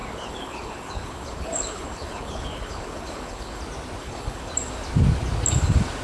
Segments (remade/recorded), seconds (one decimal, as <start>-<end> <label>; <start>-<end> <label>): 0.0-3.6 remade; 3.6-4.0 recorded; 4.0-4.5 remade; 4.5-6.0 recorded